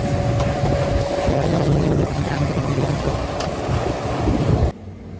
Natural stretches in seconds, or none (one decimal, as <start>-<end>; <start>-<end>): 0.0-1.3; 3.1-5.2